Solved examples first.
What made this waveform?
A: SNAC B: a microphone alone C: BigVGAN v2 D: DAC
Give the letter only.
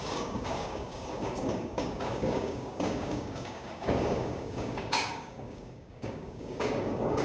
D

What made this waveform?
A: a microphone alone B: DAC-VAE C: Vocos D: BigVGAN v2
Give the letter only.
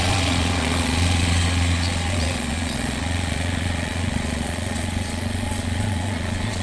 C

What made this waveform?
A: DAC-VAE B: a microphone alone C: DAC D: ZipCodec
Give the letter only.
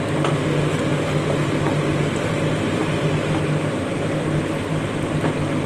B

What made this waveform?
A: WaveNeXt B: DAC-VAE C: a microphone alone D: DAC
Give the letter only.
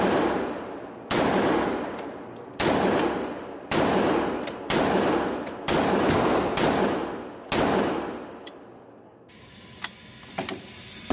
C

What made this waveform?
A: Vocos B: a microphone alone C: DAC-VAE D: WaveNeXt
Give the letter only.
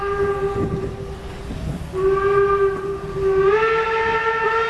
B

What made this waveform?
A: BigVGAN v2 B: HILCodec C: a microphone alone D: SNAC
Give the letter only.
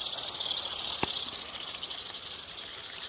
A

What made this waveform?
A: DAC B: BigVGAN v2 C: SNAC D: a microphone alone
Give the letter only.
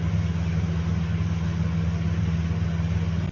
D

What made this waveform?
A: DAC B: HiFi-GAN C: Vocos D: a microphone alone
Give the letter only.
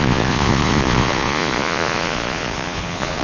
C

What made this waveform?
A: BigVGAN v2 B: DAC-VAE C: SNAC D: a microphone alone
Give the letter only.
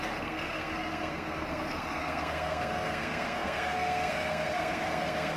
C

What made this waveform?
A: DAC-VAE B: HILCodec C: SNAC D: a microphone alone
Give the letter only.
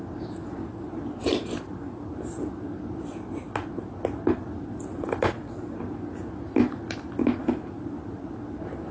D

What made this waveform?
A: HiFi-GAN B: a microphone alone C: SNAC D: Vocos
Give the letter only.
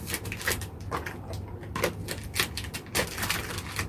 B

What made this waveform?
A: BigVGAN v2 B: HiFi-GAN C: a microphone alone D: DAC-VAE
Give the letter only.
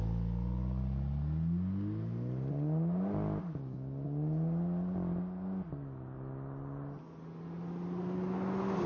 C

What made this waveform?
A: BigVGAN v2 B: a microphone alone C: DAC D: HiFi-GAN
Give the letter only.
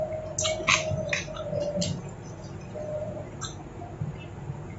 B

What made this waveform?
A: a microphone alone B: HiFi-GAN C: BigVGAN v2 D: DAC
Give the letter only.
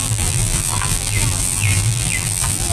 C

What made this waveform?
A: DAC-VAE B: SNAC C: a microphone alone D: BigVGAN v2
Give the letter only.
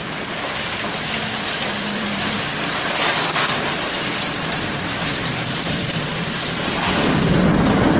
D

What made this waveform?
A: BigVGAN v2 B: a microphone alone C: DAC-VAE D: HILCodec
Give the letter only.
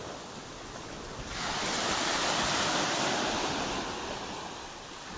B